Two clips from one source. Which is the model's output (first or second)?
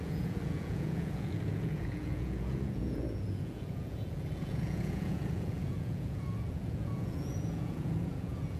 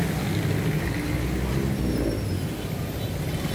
first